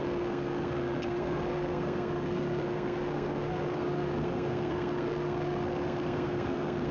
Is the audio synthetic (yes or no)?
yes